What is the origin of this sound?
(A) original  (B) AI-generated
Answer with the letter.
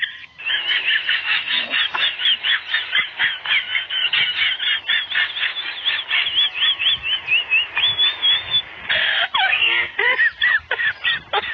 A